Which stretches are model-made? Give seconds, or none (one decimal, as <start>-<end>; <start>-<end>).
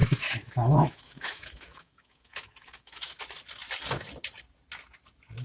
0.0-3.2